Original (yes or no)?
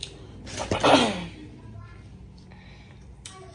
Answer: yes